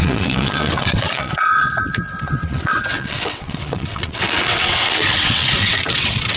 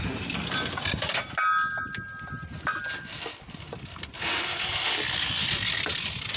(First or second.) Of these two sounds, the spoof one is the first